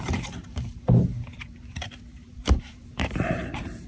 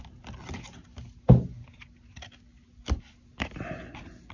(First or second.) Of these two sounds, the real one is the second